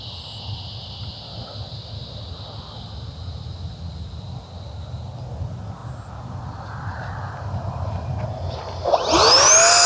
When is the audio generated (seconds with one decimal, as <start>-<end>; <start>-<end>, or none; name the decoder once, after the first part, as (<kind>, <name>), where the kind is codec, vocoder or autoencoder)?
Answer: none